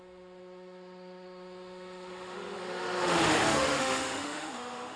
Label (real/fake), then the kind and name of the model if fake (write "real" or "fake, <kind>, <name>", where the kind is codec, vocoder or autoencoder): fake, autoencoder, DAC-VAE